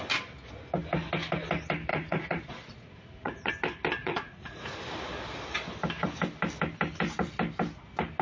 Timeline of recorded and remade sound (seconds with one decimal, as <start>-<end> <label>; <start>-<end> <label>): 0.0-1.9 recorded; 1.9-3.5 remade; 3.5-4.0 recorded; 4.0-4.7 remade; 4.7-8.2 recorded